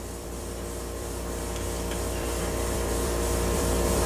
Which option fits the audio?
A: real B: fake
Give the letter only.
B